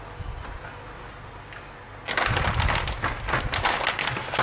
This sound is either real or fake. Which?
real